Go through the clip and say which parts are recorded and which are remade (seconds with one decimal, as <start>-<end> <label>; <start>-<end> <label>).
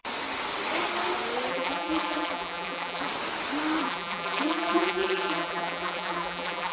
0.0-1.5 recorded; 1.5-3.1 remade; 3.1-3.8 recorded; 3.8-6.7 remade